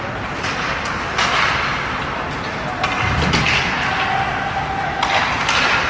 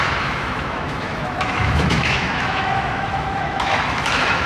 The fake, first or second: second